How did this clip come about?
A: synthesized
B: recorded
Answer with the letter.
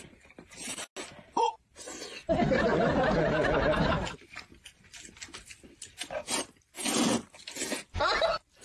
B